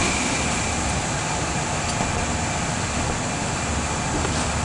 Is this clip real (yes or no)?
yes